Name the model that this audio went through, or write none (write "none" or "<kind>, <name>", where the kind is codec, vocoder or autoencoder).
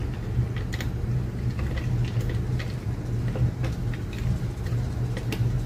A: none